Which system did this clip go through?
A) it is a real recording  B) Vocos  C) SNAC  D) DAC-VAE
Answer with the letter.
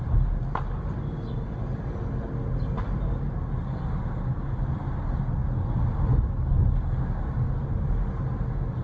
A